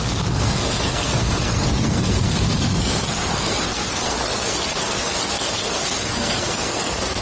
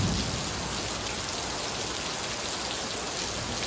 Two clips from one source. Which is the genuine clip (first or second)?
second